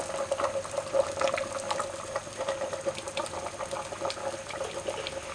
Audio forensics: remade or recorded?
recorded